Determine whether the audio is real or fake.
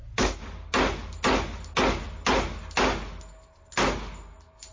real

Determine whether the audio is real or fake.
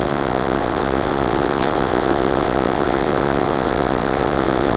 fake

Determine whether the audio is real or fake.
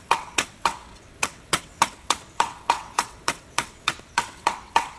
fake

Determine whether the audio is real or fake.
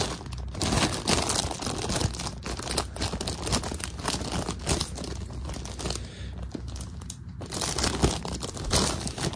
real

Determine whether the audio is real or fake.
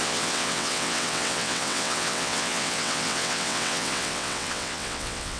fake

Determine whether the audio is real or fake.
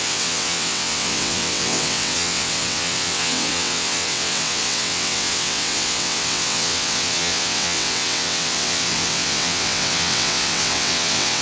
fake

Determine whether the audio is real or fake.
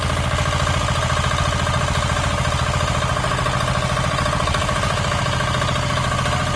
real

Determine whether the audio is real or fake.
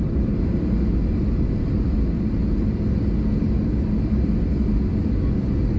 real